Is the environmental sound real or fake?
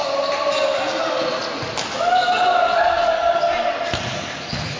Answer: real